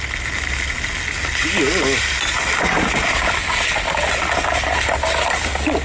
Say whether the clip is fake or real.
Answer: real